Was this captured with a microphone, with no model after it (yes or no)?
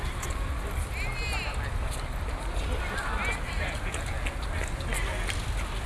yes